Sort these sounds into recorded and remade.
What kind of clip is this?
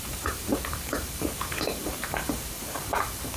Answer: remade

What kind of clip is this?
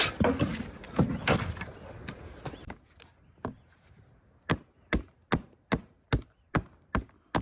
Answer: recorded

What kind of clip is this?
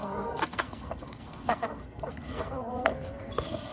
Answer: remade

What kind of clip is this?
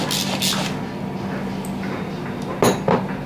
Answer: recorded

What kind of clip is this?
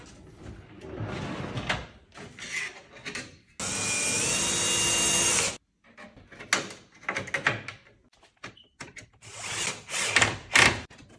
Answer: recorded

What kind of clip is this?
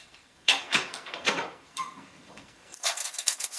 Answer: remade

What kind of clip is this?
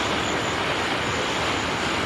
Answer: remade